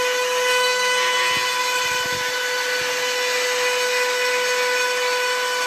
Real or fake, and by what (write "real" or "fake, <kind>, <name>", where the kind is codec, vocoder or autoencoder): real